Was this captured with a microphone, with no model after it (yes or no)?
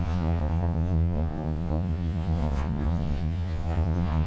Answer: no